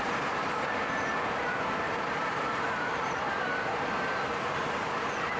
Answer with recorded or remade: remade